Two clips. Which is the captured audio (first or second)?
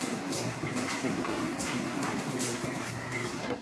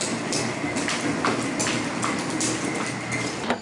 second